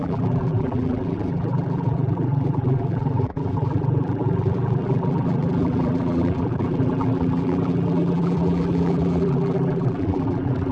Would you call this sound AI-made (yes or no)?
yes